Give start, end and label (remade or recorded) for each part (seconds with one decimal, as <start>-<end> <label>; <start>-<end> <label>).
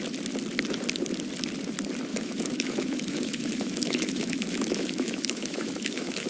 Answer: 0.0-2.1 recorded; 2.1-6.3 remade